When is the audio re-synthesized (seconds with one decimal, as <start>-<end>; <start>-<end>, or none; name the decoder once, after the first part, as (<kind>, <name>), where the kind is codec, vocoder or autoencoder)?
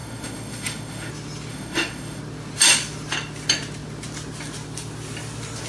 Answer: 0.0-1.1 (autoencoder, DAC-VAE); 1.5-2.2